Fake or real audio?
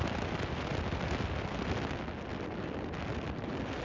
real